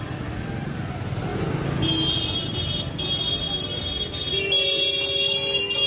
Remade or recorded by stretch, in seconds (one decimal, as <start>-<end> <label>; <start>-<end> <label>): 0.0-5.9 recorded